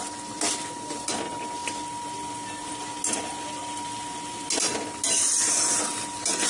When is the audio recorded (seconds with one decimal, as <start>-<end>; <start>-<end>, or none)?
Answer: 0.0-6.5